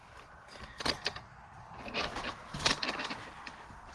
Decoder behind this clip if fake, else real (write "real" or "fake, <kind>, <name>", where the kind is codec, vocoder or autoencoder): real